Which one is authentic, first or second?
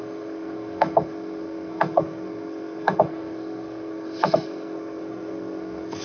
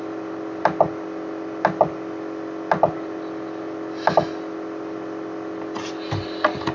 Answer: second